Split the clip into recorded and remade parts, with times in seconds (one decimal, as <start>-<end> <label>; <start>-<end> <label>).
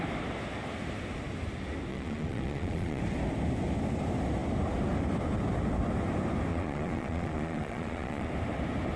0.0-1.9 recorded; 1.9-3.0 remade; 3.0-6.5 recorded; 6.5-8.3 remade; 8.3-9.0 recorded